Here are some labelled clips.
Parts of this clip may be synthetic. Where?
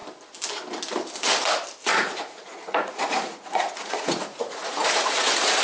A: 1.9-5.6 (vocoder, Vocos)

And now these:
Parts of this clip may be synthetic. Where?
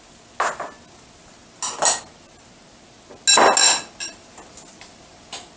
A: none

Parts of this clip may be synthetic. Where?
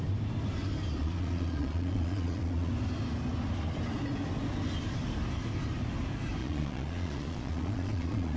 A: 1.0-2.7 (vocoder, Vocos); 6.4-8.4